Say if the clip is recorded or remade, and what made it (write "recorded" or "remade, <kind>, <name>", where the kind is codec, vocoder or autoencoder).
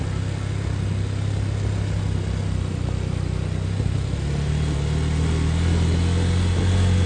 recorded